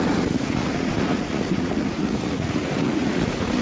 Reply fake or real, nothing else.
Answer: fake